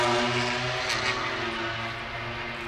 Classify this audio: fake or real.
real